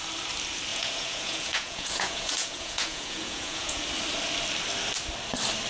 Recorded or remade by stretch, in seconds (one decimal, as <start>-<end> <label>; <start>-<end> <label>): 0.0-0.7 recorded; 0.7-3.8 remade; 3.8-5.7 recorded